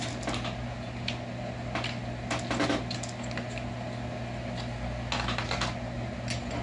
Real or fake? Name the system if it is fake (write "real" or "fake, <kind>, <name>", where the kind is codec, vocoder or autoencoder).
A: real